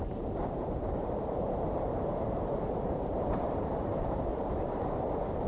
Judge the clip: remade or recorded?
remade